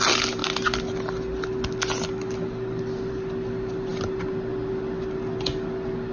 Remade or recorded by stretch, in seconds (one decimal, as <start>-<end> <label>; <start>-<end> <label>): 0.0-6.1 recorded